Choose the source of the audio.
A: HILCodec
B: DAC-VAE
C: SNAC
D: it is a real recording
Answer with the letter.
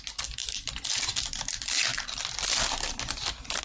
D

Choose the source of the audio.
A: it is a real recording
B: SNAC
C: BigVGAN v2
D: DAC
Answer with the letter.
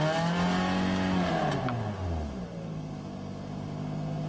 A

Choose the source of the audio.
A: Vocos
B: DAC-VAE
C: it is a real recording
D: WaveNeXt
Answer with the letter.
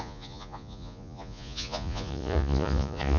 A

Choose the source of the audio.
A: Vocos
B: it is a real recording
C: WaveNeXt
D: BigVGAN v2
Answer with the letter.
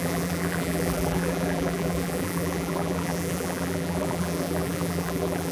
D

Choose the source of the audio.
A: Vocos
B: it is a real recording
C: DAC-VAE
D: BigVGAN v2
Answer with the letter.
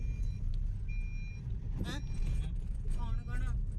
B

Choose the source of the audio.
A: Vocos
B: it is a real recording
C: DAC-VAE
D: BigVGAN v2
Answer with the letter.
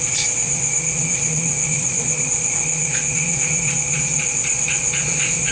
A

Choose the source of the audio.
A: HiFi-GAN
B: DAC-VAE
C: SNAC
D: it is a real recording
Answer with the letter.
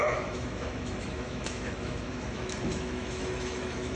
B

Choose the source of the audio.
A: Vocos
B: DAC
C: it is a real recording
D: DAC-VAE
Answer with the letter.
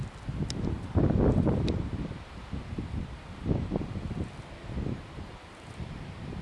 C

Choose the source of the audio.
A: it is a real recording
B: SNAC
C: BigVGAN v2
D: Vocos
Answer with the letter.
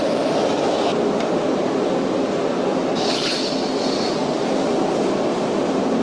A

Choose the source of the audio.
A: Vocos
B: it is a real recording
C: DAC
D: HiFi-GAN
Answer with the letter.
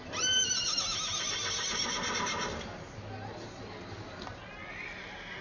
B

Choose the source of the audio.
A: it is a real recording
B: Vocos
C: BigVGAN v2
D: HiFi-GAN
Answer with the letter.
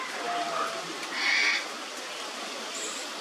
A